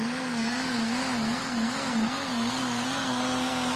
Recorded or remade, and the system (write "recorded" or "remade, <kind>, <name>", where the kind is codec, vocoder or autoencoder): remade, codec, SNAC